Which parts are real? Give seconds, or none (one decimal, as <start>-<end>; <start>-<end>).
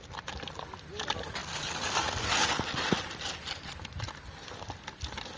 0.0-5.4